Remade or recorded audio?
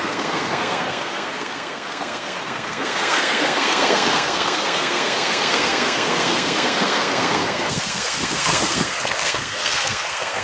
remade